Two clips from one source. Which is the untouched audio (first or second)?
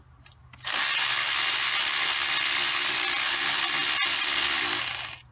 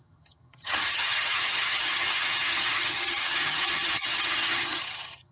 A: first